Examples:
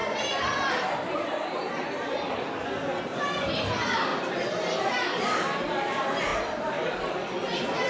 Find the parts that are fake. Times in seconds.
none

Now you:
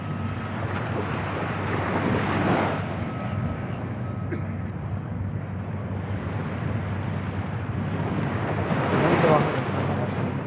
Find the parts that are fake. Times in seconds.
none

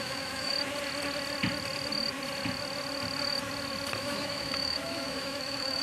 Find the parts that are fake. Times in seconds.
0.0-0.5 (autoencoder, DAC-VAE); 4.0-5.8